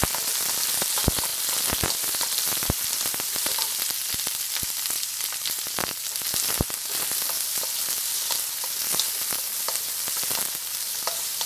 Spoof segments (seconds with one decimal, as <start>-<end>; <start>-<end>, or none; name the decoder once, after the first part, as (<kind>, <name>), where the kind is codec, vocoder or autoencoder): 0.0-11.5 (vocoder, BigVGAN v2)